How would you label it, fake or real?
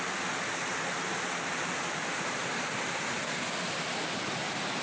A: real